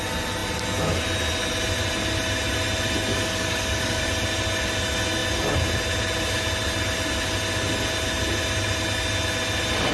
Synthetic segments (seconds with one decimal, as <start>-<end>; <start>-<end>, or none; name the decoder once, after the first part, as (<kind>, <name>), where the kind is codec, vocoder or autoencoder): 3.1-4.0 (codec, DAC)